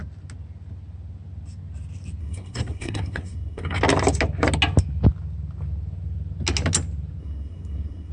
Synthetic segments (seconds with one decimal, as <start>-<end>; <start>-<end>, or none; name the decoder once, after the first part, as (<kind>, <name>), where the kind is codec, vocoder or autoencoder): 2.2-3.8 (codec, SNAC); 7.2-8.1